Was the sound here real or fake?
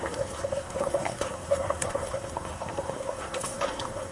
fake